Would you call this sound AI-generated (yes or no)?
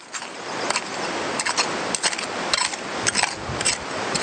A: no